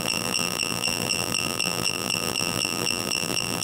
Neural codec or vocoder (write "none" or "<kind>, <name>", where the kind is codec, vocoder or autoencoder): vocoder, BigVGAN v2